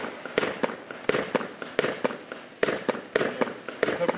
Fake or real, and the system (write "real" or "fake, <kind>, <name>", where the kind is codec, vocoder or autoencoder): real